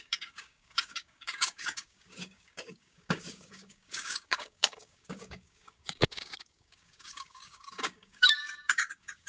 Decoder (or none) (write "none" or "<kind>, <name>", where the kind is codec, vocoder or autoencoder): codec, DAC